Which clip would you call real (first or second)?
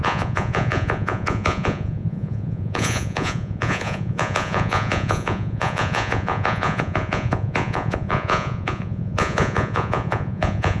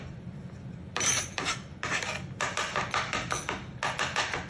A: second